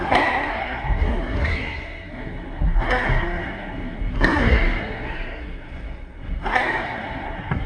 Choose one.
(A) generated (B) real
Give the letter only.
A